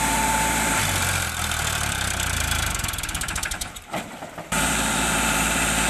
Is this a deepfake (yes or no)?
yes